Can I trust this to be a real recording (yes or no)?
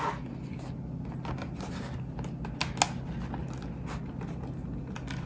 yes